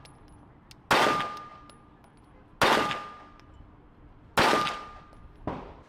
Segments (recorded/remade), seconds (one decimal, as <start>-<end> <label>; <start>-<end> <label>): 0.0-5.9 recorded